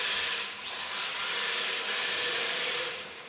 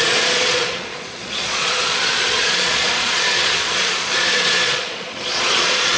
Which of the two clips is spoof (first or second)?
second